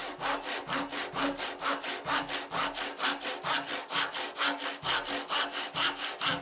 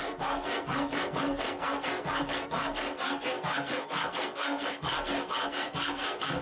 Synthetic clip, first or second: second